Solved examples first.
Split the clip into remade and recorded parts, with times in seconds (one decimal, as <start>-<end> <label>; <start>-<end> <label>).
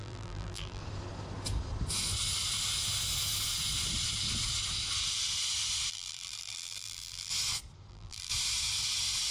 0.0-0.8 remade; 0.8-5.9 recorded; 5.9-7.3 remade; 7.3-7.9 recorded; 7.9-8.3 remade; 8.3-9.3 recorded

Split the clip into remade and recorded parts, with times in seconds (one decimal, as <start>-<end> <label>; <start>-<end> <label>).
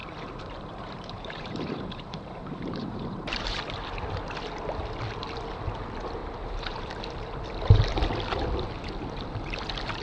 0.0-3.6 remade; 3.6-6.2 recorded; 6.2-6.9 remade; 6.9-10.0 recorded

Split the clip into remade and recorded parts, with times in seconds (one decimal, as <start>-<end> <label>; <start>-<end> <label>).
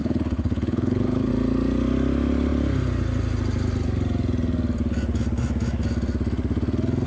0.0-1.3 remade; 1.3-7.1 recorded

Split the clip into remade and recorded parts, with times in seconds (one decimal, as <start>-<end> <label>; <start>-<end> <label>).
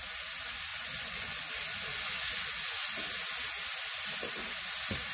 0.0-0.7 recorded; 0.7-1.5 remade; 1.5-1.9 recorded; 1.9-2.5 remade; 2.5-5.1 recorded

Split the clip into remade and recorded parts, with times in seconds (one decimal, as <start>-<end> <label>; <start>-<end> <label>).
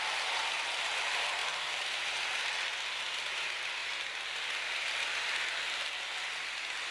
0.0-6.9 recorded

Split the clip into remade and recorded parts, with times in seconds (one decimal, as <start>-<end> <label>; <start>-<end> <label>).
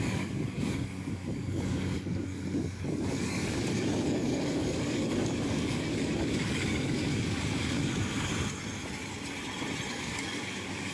0.0-8.3 remade; 8.3-9.9 recorded; 9.9-10.9 remade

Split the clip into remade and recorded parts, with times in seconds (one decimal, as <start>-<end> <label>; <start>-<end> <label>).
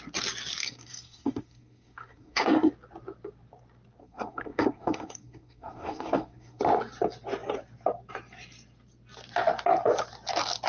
0.0-0.6 recorded; 0.6-2.7 remade; 2.7-4.0 recorded; 4.0-6.6 remade; 6.6-10.7 recorded